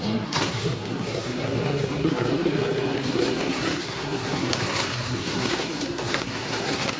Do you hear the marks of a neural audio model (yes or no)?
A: yes